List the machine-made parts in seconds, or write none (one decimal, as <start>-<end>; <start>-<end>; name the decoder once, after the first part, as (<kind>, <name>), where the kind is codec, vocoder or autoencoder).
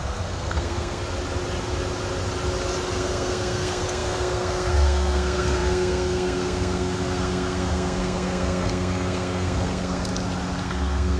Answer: 0.0-1.0 (codec, SNAC); 2.9-10.1; 10.6-11.2